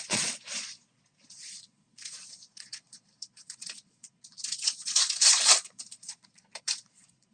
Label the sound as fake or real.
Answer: fake